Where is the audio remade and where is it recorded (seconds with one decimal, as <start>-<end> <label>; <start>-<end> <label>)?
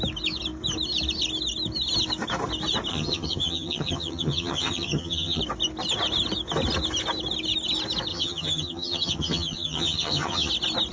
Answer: 0.0-2.9 recorded; 2.9-5.4 remade; 5.4-8.1 recorded; 8.1-10.5 remade; 10.5-10.9 recorded